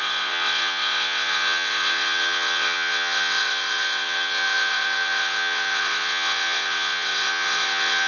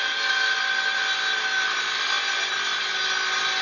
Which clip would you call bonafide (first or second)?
second